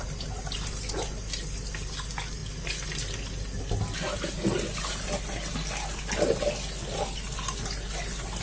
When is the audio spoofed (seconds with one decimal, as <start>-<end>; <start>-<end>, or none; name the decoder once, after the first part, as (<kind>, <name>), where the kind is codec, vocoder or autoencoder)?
none